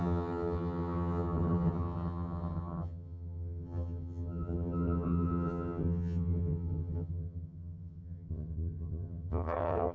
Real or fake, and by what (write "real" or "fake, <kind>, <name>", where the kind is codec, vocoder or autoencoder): fake, vocoder, HiFi-GAN